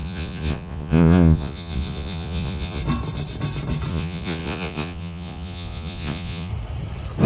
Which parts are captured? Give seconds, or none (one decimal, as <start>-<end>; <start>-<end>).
2.8-3.9; 6.5-7.3